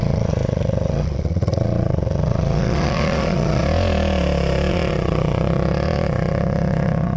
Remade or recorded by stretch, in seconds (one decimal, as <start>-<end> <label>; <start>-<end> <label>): 0.0-3.6 remade; 3.6-4.7 recorded; 4.7-7.2 remade